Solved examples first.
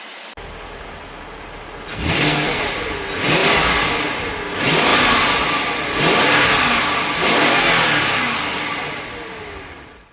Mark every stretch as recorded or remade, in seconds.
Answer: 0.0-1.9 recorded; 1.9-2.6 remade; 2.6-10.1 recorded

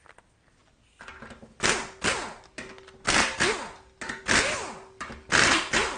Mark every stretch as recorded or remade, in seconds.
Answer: 0.0-6.0 recorded

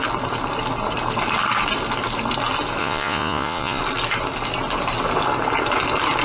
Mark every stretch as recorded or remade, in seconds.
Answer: 0.0-2.8 recorded; 2.8-3.8 remade; 3.8-6.2 recorded